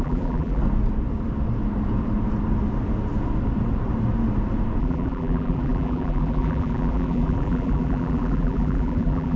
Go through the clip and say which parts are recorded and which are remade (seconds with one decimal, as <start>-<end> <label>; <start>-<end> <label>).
0.0-0.6 remade; 0.6-4.8 recorded; 4.8-9.4 remade